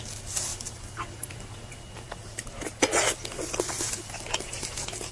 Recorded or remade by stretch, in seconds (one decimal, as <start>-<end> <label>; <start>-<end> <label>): 0.0-5.1 recorded